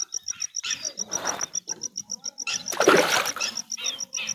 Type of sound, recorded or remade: remade